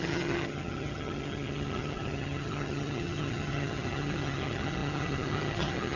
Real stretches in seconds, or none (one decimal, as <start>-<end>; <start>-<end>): none